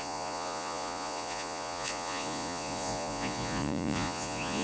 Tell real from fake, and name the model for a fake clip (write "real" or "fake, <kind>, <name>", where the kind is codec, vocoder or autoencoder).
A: fake, vocoder, Vocos